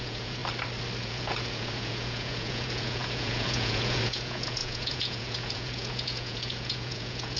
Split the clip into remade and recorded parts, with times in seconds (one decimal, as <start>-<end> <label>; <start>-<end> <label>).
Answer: 0.0-0.4 remade; 0.4-1.0 recorded; 1.0-7.4 remade

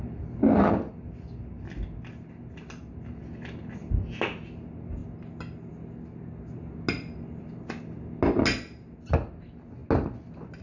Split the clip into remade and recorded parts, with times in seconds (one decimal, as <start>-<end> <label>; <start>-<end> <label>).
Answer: 0.0-10.6 recorded

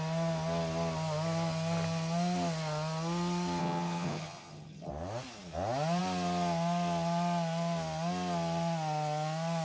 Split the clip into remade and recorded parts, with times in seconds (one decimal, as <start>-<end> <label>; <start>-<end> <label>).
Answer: 0.0-3.6 recorded; 3.6-4.9 remade; 4.9-9.6 recorded

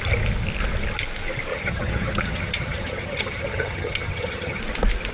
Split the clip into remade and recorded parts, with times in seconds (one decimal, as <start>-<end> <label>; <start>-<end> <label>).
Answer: 0.0-1.5 recorded; 1.5-4.6 remade; 4.6-5.1 recorded

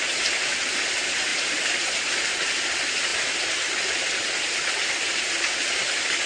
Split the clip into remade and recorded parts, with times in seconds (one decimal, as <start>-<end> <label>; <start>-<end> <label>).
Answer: 0.0-6.3 recorded

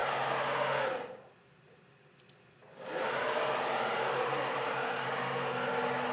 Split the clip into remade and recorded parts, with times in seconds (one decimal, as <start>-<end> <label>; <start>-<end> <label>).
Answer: 0.0-6.1 recorded

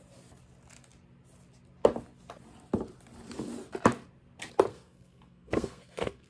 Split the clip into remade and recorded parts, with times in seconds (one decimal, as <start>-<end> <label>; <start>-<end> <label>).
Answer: 0.0-4.7 recorded; 4.7-6.3 remade

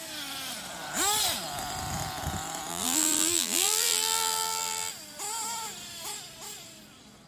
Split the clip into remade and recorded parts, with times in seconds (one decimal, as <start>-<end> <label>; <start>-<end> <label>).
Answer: 0.0-2.7 recorded; 2.7-4.9 remade; 4.9-7.3 recorded